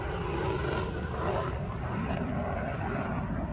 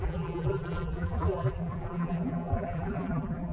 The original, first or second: first